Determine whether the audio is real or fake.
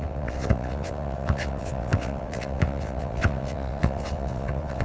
fake